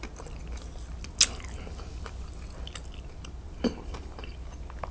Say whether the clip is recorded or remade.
recorded